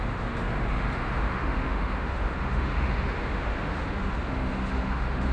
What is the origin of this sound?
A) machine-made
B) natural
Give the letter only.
A